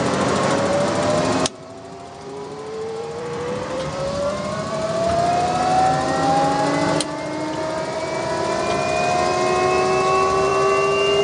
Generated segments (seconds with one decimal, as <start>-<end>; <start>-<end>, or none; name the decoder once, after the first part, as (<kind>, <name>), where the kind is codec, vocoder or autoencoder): 1.5-5.3 (vocoder, BigVGAN v2)